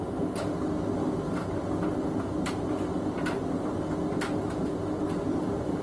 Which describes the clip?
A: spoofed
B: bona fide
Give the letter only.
B